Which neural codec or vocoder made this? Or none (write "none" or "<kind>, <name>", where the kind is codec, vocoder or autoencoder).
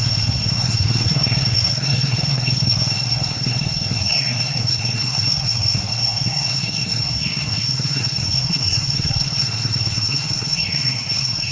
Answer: codec, SNAC